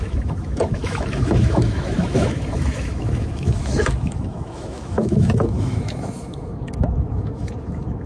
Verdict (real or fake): fake